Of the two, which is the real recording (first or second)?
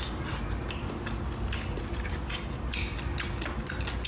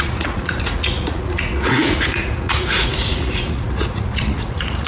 first